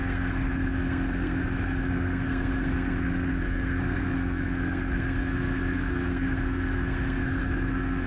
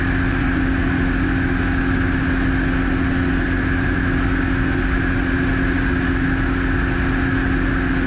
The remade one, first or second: first